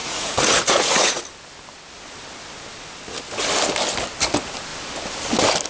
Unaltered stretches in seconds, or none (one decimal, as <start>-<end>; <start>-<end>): 1.2-5.7